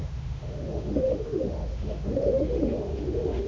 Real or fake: fake